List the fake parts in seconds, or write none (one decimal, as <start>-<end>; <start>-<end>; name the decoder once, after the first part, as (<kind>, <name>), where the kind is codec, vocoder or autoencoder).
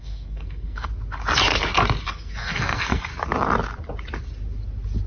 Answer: 0.0-0.9 (codec, SNAC); 2.1-3.1